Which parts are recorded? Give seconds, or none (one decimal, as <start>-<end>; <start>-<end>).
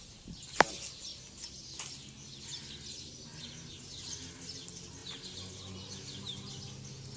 0.0-7.2